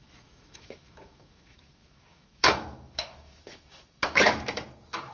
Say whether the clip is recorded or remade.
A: remade